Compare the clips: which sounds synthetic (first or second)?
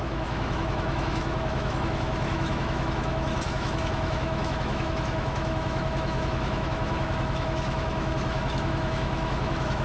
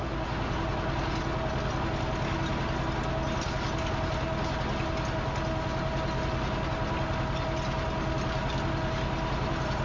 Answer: first